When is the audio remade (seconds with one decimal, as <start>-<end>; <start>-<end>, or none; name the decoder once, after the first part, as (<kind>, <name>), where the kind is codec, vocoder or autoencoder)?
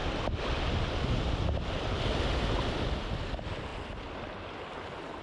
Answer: 0.0-2.2 (vocoder, BigVGAN v2)